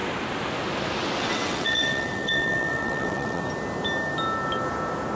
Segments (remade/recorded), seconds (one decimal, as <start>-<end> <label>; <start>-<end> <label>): 0.0-1.2 recorded; 1.2-3.4 remade; 3.4-5.2 recorded